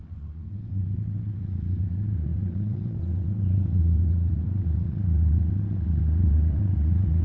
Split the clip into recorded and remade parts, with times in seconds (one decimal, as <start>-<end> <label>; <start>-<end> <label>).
0.0-7.2 remade